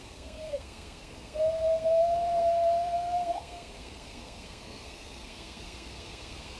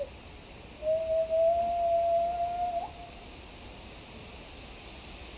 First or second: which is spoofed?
first